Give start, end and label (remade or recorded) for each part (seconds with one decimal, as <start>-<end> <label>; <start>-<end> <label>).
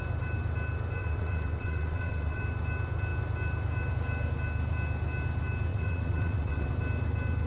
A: 0.0-1.0 recorded; 1.0-2.4 remade; 2.4-5.7 recorded; 5.7-6.7 remade; 6.7-7.5 recorded